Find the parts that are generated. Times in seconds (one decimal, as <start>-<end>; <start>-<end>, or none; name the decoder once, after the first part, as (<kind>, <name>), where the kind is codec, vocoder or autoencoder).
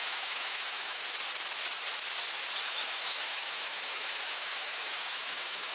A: 0.0-1.0 (autoencoder, DAC-VAE); 2.6-5.7